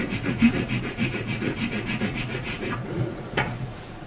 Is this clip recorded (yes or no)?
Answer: no